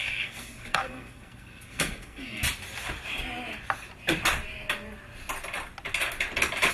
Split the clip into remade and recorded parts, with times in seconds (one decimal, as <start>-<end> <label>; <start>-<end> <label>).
0.0-2.4 remade; 2.4-6.7 recorded